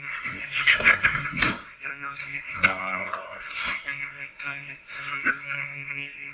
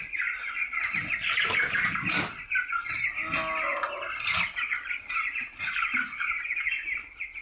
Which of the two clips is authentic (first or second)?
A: second